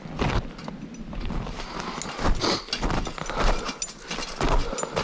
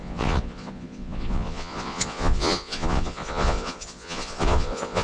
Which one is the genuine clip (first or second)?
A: first